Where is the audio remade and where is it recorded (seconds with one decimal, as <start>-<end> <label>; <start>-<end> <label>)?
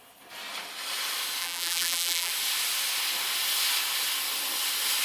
0.0-1.4 recorded; 1.4-2.3 remade; 2.3-5.0 recorded